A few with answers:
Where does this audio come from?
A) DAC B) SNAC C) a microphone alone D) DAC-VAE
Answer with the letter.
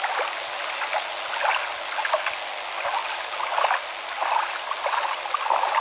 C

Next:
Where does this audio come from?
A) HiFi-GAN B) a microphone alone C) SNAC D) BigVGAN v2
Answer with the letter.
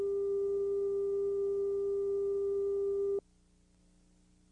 B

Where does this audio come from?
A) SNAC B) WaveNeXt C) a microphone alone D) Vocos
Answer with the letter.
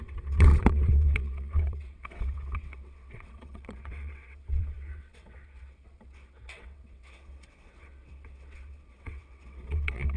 B